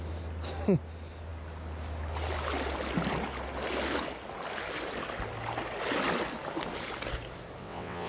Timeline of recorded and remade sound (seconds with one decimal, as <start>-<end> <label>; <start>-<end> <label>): 0.0-7.6 recorded; 7.6-8.1 remade

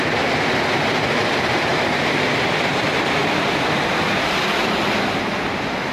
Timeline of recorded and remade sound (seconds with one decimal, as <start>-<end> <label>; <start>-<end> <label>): 0.0-1.7 recorded; 1.7-2.8 remade; 2.8-5.9 recorded

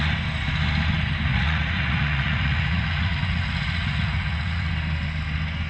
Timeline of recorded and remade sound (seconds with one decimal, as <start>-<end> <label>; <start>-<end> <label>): 0.0-1.3 recorded; 1.3-4.7 remade; 4.7-5.7 recorded

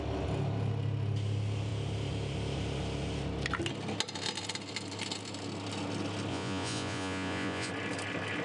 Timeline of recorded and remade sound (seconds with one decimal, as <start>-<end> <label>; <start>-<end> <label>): 0.0-6.3 recorded; 6.3-7.7 remade; 7.7-8.4 recorded